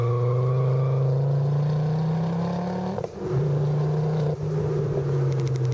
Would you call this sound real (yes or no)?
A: yes